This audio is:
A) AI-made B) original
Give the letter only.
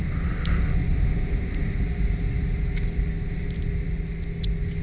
B